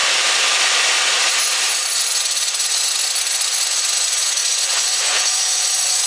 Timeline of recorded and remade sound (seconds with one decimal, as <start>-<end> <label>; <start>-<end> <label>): 0.0-3.7 recorded; 3.7-6.1 remade